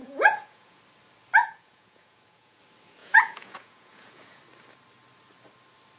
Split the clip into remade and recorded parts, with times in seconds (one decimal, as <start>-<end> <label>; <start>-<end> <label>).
0.0-0.8 remade; 0.8-1.4 recorded; 1.4-2.6 remade; 2.6-3.0 recorded; 3.0-4.4 remade; 4.4-6.0 recorded